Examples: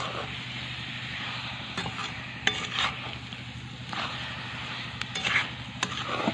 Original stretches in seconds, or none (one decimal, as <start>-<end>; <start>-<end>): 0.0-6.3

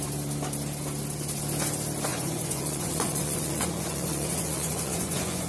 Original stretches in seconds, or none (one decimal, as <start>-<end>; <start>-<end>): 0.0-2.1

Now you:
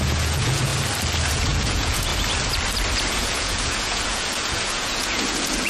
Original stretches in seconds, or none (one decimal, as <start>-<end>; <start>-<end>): 0.7-1.2; 2.1-3.1